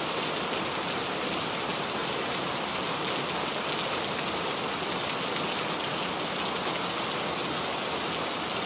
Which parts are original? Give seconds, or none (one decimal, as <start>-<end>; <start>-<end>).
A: 0.0-8.7